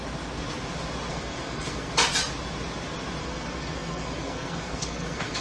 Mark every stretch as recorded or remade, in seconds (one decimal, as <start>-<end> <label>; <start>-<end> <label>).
0.0-1.1 recorded; 1.1-1.9 remade; 1.9-3.2 recorded; 3.2-5.4 remade